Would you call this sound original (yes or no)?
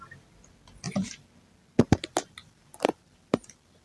yes